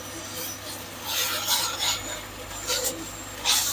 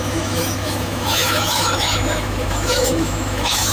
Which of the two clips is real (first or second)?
first